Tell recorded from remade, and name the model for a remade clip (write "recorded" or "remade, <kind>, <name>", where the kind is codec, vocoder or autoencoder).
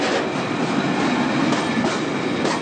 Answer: recorded